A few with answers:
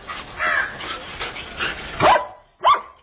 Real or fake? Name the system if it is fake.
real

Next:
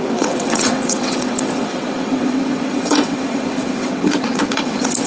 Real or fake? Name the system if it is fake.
fake, vocoder, WaveNeXt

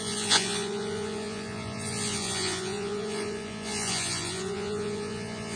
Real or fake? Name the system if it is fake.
fake, vocoder, Vocos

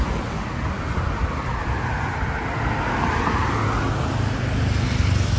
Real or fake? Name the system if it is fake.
real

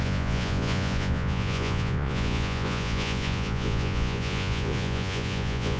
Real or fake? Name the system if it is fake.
fake, vocoder, Vocos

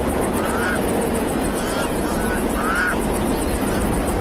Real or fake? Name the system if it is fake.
real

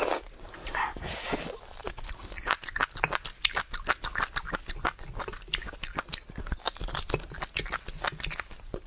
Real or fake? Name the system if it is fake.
real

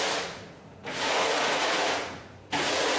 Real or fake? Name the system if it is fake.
fake, vocoder, Vocos